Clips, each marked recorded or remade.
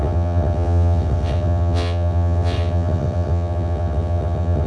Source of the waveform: remade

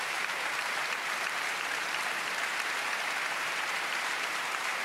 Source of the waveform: remade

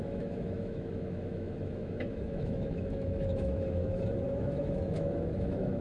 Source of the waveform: remade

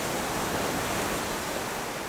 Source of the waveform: recorded